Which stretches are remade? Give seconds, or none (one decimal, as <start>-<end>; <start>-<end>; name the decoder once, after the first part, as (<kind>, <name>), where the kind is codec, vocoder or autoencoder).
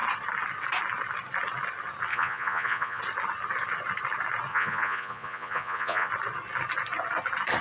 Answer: 2.1-3.0 (vocoder, Vocos); 4.5-6.1